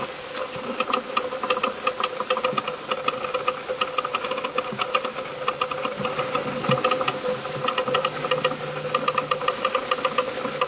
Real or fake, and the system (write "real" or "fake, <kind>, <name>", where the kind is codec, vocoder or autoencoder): real